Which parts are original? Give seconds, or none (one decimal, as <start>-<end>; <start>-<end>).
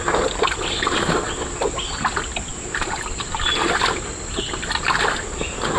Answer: 0.0-2.5; 3.7-5.8